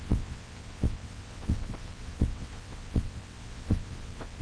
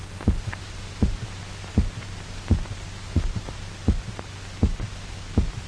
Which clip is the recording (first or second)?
second